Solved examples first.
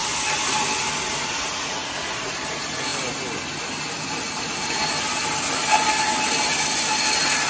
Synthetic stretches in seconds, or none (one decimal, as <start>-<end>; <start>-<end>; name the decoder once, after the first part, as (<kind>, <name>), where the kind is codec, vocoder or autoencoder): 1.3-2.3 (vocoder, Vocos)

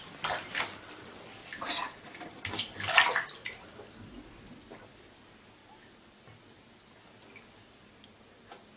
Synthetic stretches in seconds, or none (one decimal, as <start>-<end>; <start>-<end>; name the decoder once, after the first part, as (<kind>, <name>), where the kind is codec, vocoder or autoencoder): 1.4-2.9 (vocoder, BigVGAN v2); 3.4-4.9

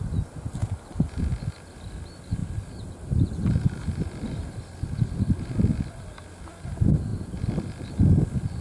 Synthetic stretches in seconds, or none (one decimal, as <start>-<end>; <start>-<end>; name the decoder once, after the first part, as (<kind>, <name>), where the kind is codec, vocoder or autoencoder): none

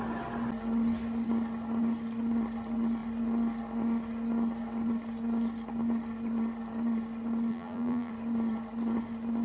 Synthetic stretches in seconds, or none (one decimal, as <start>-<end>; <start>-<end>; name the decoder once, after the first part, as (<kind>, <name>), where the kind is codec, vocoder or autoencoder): 7.5-8.1 (vocoder, BigVGAN v2)